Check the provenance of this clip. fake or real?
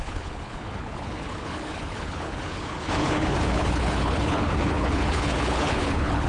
fake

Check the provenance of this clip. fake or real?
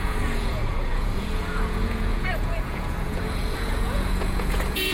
fake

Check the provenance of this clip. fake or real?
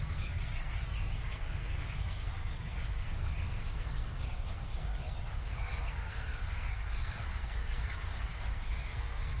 fake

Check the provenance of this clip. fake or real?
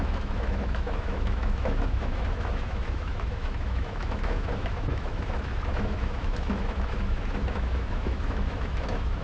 fake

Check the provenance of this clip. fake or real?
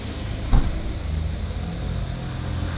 real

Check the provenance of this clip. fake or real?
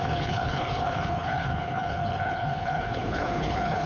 fake